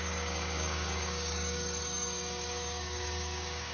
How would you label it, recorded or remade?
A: remade